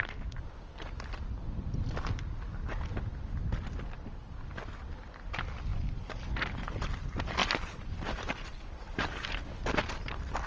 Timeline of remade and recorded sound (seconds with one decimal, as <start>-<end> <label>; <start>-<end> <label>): 0.0-7.4 recorded; 7.4-9.3 remade; 9.3-10.5 recorded